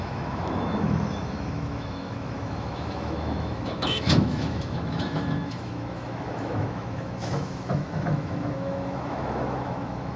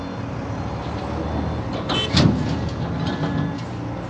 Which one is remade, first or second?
first